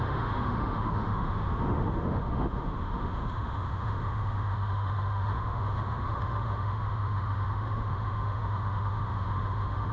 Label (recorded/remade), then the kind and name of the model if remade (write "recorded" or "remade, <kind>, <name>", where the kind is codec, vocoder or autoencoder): remade, autoencoder, DAC-VAE